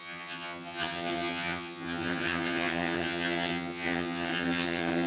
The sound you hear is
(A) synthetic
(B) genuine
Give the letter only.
A